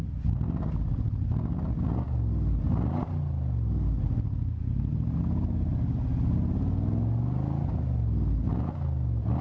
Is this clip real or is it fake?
real